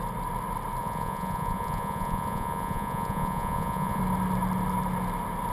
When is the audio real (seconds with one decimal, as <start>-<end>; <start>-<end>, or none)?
0.0-0.8; 4.0-5.5